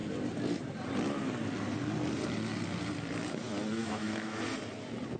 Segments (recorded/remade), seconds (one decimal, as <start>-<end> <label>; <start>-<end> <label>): 0.0-3.8 recorded; 3.8-4.4 remade; 4.4-5.2 recorded